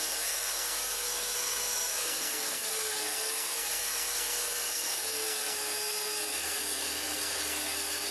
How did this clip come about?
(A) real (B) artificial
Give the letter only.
B